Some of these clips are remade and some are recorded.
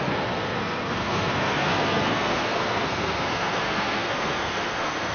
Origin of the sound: remade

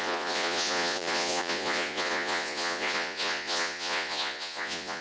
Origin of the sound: remade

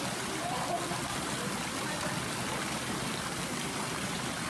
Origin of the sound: recorded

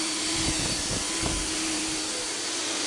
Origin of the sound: recorded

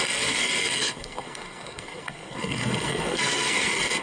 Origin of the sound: remade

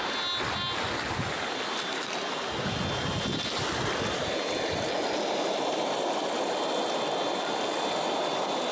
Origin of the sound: recorded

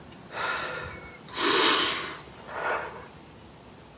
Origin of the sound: recorded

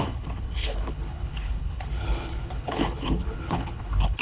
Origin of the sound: remade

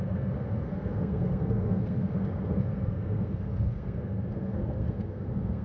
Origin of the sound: remade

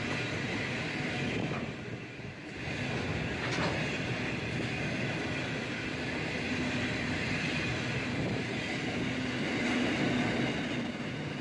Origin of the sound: recorded